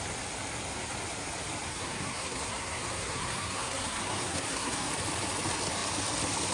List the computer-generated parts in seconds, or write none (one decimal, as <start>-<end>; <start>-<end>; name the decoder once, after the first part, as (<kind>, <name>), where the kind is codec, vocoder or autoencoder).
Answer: 1.7-4.9 (codec, SNAC)